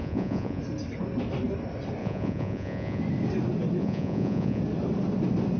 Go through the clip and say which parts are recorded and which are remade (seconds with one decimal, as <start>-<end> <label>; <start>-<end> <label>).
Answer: 0.0-0.6 remade; 0.6-2.0 recorded; 2.0-3.0 remade; 3.0-3.8 recorded; 3.8-4.6 remade; 4.6-5.6 recorded

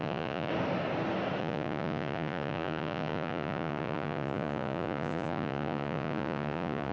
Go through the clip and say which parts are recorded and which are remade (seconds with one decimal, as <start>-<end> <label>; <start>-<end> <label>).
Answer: 0.0-0.5 remade; 0.5-1.4 recorded; 1.4-6.9 remade